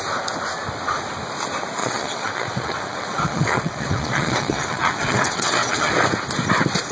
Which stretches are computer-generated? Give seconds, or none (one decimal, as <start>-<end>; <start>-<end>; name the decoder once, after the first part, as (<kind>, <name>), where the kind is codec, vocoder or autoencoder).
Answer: 1.8-5.9 (vocoder, WaveNeXt)